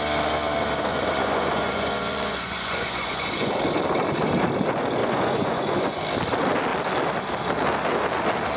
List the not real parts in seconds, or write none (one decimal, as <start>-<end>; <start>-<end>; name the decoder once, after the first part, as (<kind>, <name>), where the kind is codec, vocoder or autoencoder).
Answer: 0.9-3.5 (vocoder, Vocos); 5.0-6.0

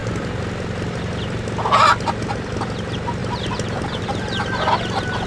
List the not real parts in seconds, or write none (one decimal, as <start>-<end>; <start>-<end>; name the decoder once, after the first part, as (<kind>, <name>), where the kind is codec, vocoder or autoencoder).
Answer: 3.2-4.0 (vocoder, BigVGAN v2)